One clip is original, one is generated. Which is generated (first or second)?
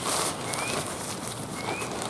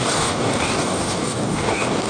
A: second